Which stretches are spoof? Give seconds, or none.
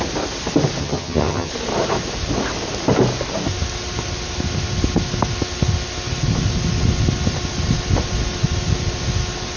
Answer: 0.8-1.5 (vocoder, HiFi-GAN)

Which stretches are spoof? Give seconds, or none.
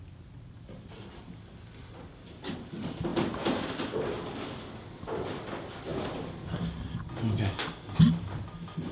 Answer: none